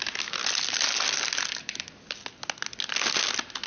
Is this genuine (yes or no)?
yes